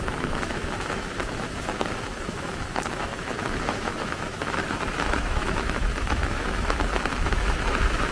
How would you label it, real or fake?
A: fake